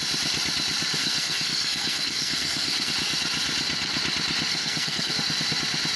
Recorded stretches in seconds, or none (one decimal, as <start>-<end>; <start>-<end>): 0.0-1.0; 2.9-4.5; 5.1-6.0